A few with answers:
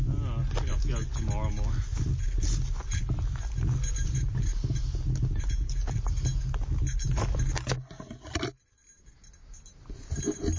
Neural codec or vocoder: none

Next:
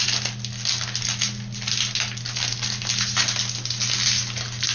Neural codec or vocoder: none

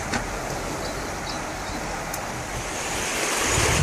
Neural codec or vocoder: none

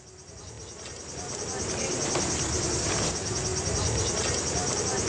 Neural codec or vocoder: none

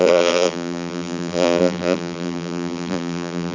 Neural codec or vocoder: vocoder, BigVGAN v2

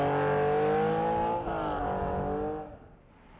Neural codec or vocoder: none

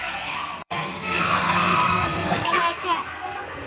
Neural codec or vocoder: codec, SNAC